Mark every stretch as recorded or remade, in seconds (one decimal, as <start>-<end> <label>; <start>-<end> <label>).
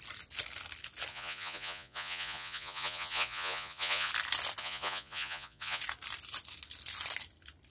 0.0-1.1 recorded; 1.1-4.1 remade; 4.1-4.6 recorded; 4.6-5.8 remade; 5.8-7.7 recorded